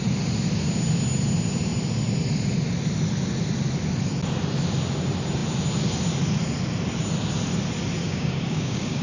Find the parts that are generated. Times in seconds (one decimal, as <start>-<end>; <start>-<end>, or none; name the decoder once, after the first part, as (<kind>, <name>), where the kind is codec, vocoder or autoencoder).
8.0-9.0 (codec, DAC)